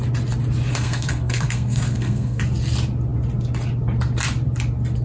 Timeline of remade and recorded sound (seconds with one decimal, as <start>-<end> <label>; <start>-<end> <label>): 0.0-0.7 recorded; 0.7-2.4 remade; 2.4-5.0 recorded